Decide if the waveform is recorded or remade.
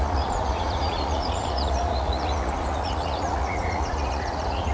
remade